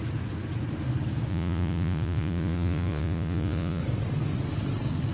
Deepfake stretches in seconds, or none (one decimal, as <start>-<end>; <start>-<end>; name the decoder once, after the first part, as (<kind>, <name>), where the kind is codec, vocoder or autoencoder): 1.3-3.8 (vocoder, Vocos)

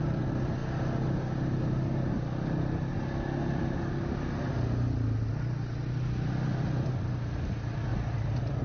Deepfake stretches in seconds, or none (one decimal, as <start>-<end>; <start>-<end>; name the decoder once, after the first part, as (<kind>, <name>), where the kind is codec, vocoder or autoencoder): none